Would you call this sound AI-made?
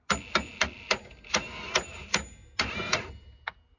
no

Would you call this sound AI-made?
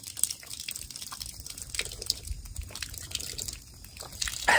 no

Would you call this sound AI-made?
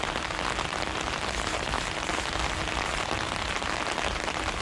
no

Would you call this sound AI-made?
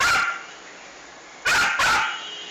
no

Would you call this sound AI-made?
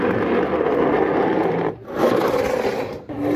no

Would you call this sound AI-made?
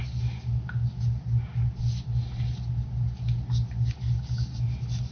no